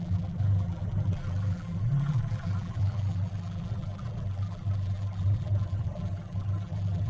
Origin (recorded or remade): remade